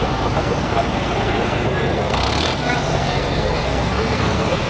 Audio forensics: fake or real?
fake